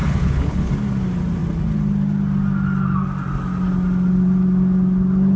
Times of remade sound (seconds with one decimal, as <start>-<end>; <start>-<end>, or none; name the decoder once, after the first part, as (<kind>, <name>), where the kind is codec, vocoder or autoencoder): 0.0-0.7 (codec, HILCodec)